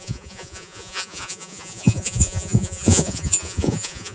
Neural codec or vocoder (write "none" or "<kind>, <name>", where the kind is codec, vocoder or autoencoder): vocoder, Vocos